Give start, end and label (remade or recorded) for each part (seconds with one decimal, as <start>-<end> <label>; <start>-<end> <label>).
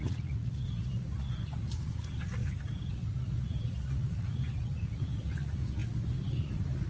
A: 0.0-2.4 remade; 2.4-2.9 recorded; 2.9-6.9 remade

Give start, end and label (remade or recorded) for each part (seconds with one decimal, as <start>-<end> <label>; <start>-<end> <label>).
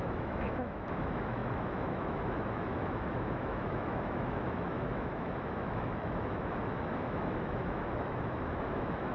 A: 0.0-9.1 remade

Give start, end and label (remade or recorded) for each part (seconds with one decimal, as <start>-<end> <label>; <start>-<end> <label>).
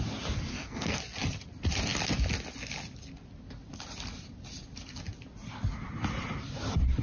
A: 0.0-0.5 recorded; 0.5-1.0 remade; 1.0-7.0 recorded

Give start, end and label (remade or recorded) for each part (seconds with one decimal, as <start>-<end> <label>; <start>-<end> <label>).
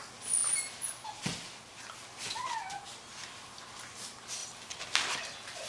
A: 0.0-5.7 recorded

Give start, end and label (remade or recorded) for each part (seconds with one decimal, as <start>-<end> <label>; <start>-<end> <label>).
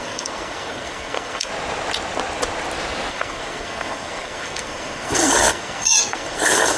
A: 0.0-1.5 remade; 1.5-3.1 recorded; 3.1-6.8 remade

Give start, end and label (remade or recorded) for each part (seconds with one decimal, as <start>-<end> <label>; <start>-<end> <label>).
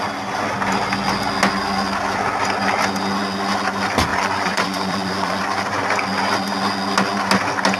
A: 0.0-4.1 recorded; 4.1-5.4 remade; 5.4-7.8 recorded